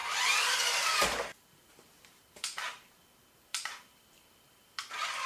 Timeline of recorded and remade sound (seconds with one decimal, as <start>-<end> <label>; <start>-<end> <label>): 0.0-3.5 recorded; 3.5-5.3 remade